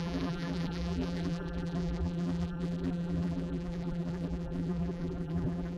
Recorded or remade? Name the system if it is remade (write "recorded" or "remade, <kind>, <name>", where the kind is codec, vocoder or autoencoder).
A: remade, vocoder, BigVGAN v2